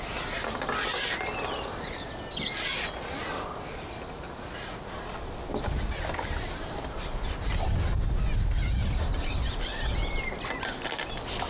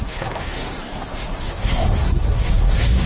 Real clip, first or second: first